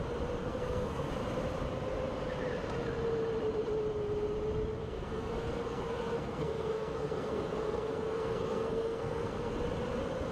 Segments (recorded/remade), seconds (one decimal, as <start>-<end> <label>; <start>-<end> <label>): 0.0-0.4 recorded; 0.4-1.1 remade; 1.1-4.8 recorded; 4.8-9.5 remade; 9.5-10.3 recorded